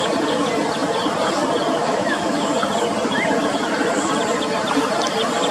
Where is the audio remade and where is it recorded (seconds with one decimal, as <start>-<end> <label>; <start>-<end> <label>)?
0.0-1.8 recorded; 1.8-2.5 remade; 2.5-5.5 recorded